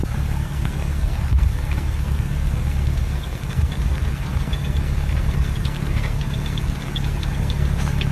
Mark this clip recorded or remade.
remade